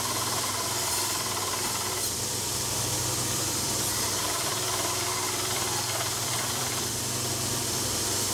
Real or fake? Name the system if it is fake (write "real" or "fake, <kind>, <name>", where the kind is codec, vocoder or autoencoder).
fake, vocoder, BigVGAN v2